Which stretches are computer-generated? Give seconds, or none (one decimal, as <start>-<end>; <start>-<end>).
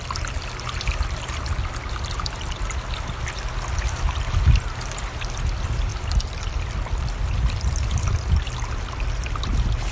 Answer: none